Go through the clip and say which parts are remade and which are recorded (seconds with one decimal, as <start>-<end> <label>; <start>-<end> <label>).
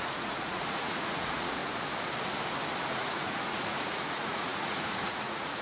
0.0-1.6 remade; 1.6-2.9 recorded; 2.9-5.6 remade